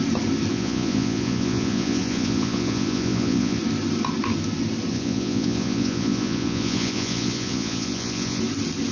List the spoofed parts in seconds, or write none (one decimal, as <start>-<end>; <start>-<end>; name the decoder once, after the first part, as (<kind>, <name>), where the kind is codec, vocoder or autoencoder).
0.5-3.6 (vocoder, Vocos); 4.9-8.4